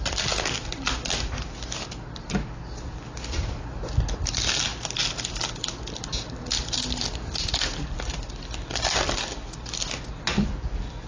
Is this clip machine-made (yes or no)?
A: no